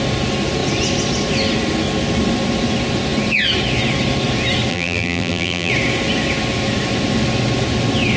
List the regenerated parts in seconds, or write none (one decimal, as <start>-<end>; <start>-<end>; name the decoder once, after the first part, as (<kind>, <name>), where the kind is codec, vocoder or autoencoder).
4.7-5.7 (vocoder, BigVGAN v2)